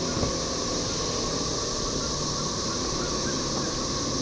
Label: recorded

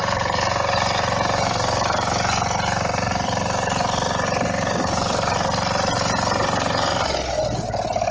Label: recorded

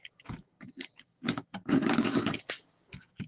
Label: remade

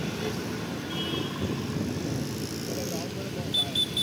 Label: recorded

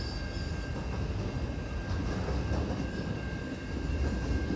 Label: recorded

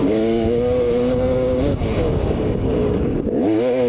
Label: remade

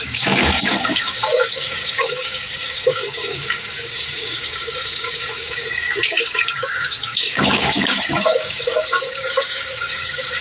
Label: remade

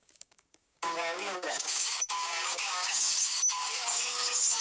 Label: remade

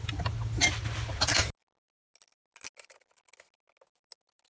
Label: recorded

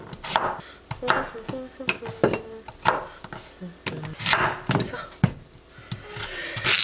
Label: recorded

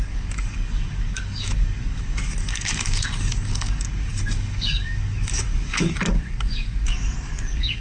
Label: remade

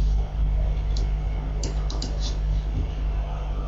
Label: remade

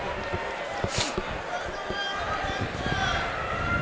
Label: recorded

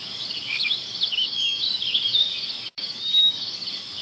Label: remade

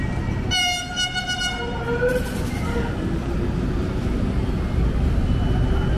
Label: recorded